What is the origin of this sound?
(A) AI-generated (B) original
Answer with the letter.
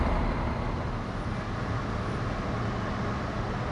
B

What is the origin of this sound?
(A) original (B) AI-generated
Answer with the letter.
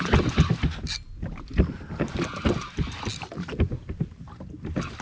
A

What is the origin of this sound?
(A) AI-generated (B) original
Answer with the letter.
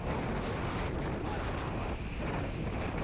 B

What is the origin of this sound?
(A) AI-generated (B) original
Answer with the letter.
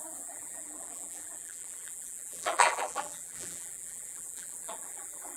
A